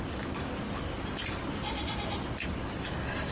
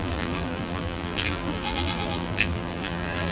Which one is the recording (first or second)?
first